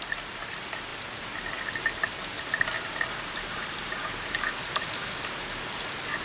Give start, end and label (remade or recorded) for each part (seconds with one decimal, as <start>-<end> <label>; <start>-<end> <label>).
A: 0.0-6.2 recorded